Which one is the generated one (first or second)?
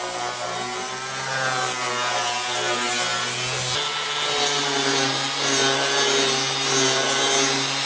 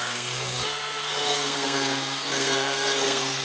second